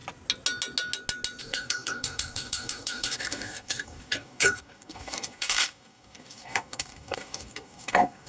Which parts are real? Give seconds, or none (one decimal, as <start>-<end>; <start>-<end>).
0.0-1.4